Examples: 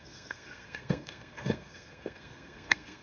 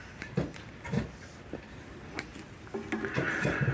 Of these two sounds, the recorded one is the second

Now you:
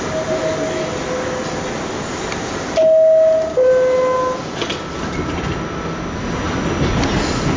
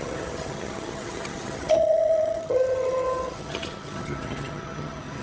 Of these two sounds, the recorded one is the first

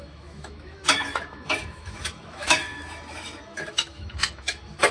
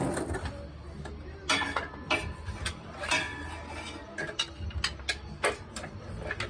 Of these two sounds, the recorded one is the second